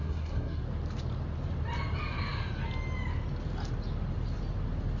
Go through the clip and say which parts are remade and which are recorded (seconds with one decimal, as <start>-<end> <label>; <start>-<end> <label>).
0.0-0.6 remade; 0.6-5.0 recorded

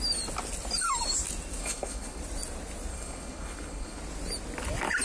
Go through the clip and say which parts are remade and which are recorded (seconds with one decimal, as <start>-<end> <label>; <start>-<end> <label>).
0.0-1.6 recorded; 1.6-2.2 remade; 2.2-2.9 recorded; 2.9-4.0 remade; 4.0-5.0 recorded

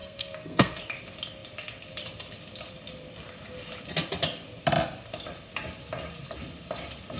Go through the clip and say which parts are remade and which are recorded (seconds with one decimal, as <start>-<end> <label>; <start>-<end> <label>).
0.0-0.8 remade; 0.8-7.2 recorded

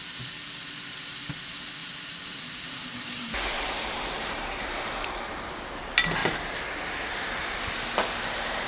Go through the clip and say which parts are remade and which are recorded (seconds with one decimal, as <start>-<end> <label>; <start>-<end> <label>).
0.0-1.8 recorded; 1.8-5.5 remade; 5.5-6.2 recorded; 6.2-6.8 remade; 6.8-8.7 recorded

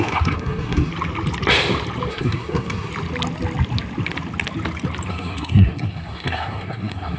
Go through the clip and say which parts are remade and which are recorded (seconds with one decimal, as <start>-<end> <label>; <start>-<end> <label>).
0.0-0.9 remade; 0.9-2.1 recorded; 2.1-2.9 remade; 2.9-5.1 recorded; 5.1-7.2 remade

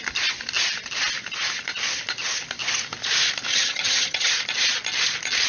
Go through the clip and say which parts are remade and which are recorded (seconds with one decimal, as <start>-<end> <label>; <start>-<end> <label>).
0.0-3.5 recorded; 3.5-4.3 remade; 4.3-5.5 recorded